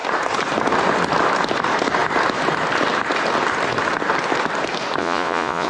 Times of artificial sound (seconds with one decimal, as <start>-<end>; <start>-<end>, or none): 5.0-5.7